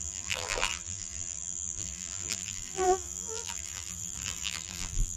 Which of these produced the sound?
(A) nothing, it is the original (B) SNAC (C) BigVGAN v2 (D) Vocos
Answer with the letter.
C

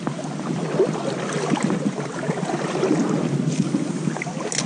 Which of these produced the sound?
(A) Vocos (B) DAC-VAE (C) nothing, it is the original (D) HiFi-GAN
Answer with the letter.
C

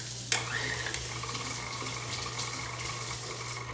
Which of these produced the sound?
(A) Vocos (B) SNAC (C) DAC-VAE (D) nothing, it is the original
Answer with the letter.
D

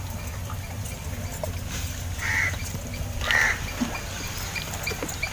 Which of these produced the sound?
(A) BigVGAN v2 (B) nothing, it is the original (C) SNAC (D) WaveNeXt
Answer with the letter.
B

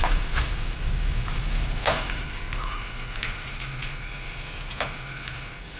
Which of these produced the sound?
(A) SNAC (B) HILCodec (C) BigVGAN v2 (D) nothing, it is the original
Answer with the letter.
D